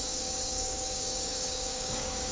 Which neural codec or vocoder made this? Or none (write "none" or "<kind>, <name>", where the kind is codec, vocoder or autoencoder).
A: codec, DAC